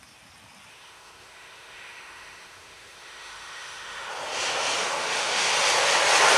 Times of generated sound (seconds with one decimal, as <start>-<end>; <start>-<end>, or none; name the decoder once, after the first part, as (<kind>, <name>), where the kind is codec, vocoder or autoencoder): 0.7-4.1 (autoencoder, DAC-VAE); 4.8-5.5